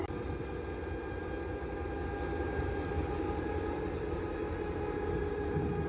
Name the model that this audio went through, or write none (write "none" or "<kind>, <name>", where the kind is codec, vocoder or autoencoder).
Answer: none